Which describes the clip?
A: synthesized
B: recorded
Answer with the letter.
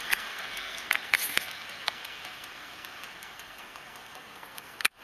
A